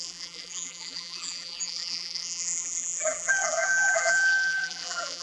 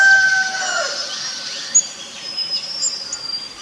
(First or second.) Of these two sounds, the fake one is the first